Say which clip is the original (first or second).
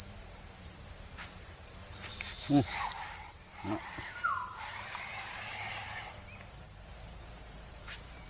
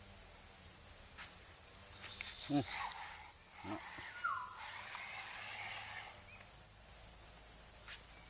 second